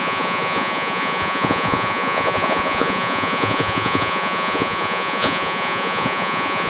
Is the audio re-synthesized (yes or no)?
yes